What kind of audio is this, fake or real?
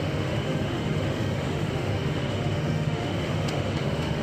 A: fake